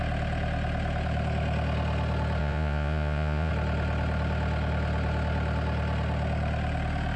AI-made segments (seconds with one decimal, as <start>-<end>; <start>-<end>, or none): 2.4-3.5

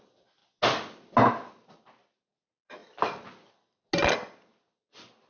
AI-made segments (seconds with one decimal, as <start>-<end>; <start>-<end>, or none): none

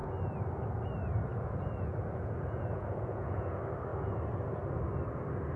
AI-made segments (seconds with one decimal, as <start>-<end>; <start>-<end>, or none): 1.3-3.5

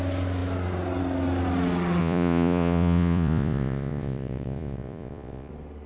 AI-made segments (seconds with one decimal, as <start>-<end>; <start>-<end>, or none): 2.0-5.5

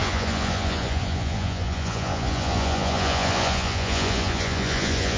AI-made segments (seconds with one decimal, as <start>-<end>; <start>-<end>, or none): 0.0-5.2

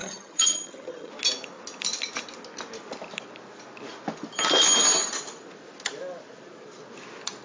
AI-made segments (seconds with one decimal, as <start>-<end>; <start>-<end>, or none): 0.0-1.1

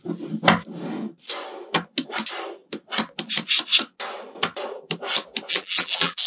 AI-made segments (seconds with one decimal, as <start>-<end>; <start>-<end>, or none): 5.5-6.3